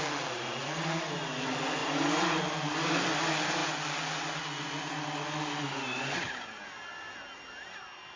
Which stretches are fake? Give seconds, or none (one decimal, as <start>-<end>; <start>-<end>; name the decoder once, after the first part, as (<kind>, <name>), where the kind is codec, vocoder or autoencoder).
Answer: 1.8-2.4 (vocoder, BigVGAN v2)